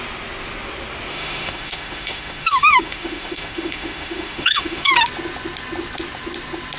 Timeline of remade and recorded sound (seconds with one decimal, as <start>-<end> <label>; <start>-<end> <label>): 0.0-1.1 recorded; 1.1-4.9 remade; 4.9-6.8 recorded